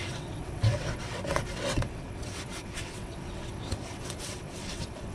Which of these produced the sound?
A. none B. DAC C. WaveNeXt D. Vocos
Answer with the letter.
C